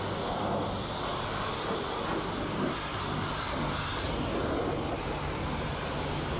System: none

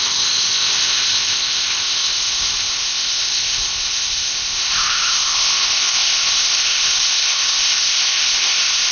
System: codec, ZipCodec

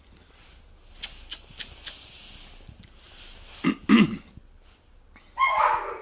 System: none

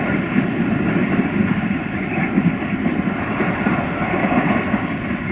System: none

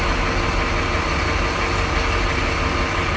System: none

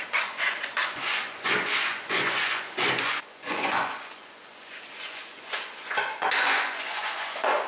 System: vocoder, Vocos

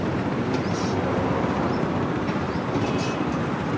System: none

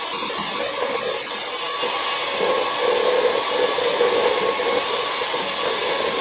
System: none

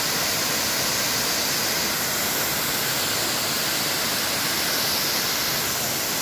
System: none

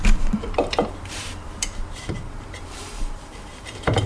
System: vocoder, BigVGAN v2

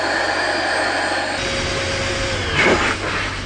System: none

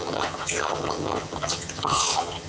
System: vocoder, HiFi-GAN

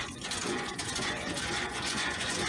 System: vocoder, Vocos